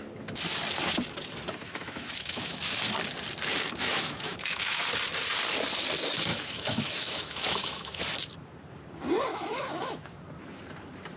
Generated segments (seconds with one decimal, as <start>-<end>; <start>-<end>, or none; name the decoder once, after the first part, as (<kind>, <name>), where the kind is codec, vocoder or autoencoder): 1.6-2.6 (autoencoder, DAC-VAE); 3.8-4.9; 6.3-8.0; 9.3-10.2